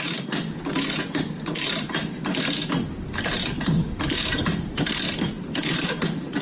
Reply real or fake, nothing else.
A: real